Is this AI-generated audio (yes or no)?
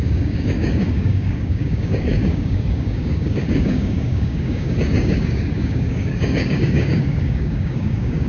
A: yes